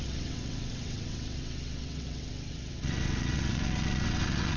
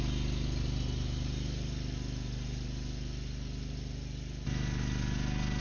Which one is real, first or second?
second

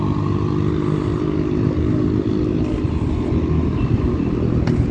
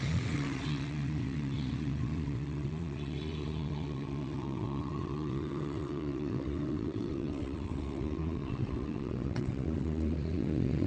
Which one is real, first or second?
first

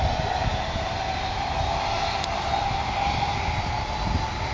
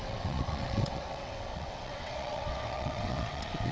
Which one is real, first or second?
first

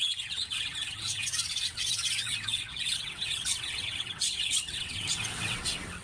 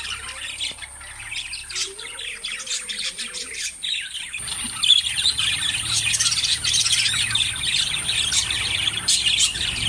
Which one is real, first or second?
second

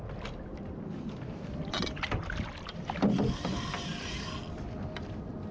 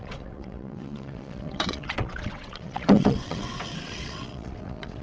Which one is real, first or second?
first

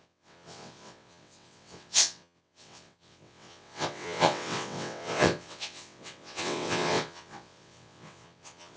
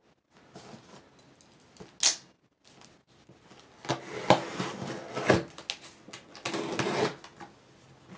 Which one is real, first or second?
second